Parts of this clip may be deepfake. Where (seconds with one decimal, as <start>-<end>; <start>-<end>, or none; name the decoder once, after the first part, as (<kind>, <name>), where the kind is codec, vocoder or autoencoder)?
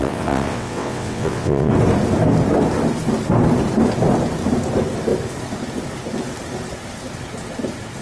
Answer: 0.0-1.7 (vocoder, WaveNeXt)